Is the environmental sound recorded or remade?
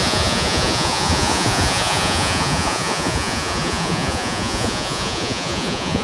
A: remade